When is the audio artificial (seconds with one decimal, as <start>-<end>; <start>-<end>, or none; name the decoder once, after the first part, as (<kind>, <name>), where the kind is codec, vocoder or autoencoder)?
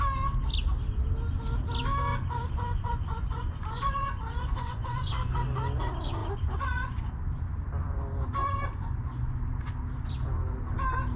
2.1-5.4 (vocoder, Vocos); 6.2-7.1; 8.4-9.7